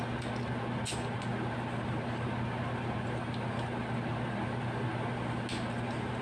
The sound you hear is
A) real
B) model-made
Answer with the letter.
A